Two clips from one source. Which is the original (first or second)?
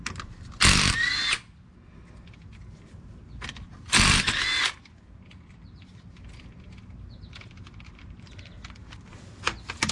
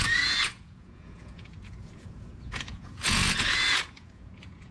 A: first